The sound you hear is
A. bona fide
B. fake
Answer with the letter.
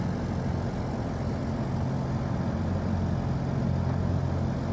A